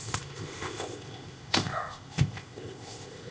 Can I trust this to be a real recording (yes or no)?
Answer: no